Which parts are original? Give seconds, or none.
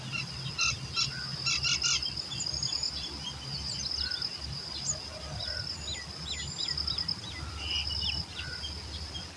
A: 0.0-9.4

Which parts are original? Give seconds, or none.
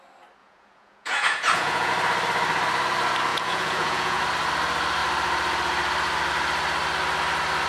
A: 0.0-0.4; 1.9-3.3; 4.2-7.7